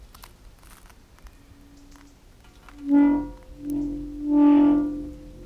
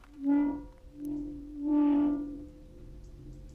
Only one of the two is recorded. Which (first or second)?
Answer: first